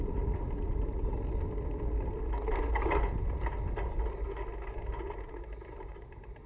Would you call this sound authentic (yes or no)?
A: yes